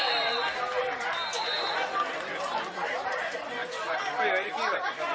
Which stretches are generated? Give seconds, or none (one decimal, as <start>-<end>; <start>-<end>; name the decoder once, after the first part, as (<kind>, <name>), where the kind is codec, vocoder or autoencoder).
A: none